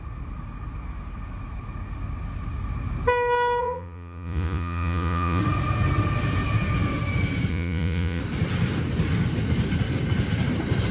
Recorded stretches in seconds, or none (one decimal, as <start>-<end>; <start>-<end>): 0.0-3.6; 5.4-7.5; 8.2-10.9